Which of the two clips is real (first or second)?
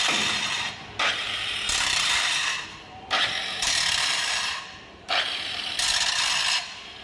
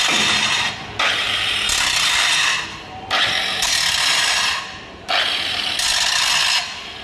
second